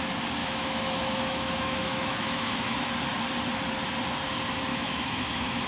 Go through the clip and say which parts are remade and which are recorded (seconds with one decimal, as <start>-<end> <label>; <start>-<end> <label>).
0.0-0.4 recorded; 0.4-2.9 remade; 2.9-4.7 recorded; 4.7-5.7 remade